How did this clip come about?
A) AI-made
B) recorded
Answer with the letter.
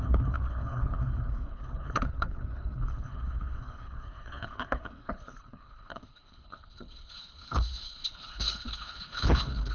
A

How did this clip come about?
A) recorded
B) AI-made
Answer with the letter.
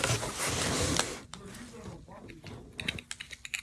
A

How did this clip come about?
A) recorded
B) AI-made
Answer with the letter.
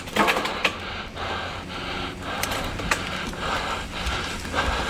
A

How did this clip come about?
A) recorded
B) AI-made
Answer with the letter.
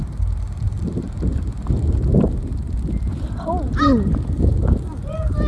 A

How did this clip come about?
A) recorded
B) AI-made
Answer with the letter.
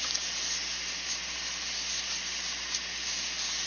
A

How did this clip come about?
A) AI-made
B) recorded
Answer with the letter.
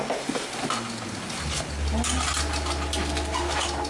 B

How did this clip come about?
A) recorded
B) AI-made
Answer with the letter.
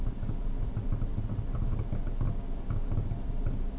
A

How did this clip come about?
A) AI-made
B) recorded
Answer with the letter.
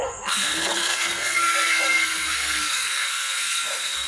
A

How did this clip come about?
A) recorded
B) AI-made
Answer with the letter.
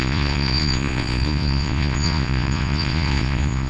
B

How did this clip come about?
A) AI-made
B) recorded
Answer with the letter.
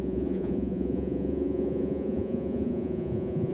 A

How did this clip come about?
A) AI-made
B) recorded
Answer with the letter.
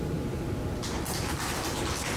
B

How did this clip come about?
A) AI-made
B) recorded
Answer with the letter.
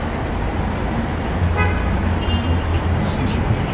B